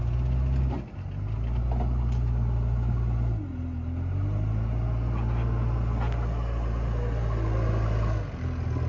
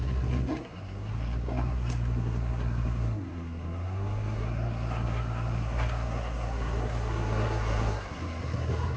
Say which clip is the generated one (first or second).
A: second